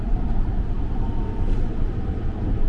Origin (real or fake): fake